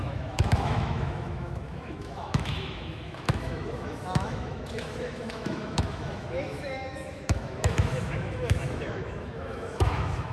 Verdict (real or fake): fake